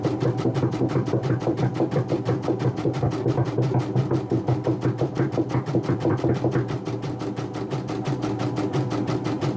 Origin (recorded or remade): remade